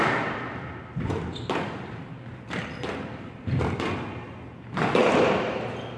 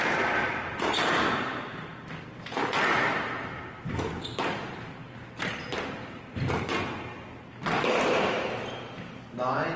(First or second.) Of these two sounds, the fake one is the first